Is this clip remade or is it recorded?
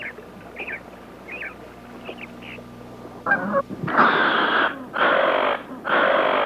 recorded